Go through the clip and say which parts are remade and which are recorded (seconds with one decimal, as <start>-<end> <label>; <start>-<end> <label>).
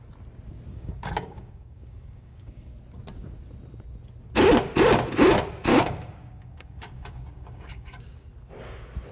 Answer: 0.0-0.7 recorded; 0.7-2.7 remade; 2.7-5.7 recorded; 5.7-8.3 remade; 8.3-9.1 recorded